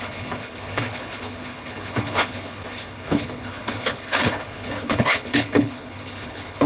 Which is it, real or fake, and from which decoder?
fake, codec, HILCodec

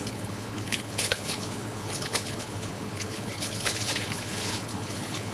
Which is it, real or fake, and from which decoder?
fake, codec, HILCodec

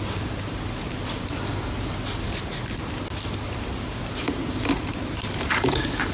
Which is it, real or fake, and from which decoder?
real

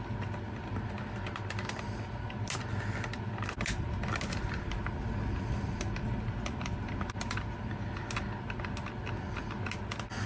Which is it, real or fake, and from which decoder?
real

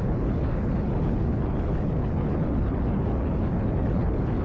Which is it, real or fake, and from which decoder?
fake, codec, HILCodec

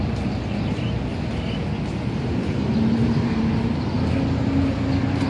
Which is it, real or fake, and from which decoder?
real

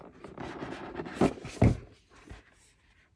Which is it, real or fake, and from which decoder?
real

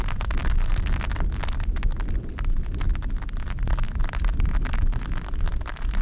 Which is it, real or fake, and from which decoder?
real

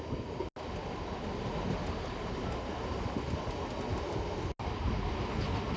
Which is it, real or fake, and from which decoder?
real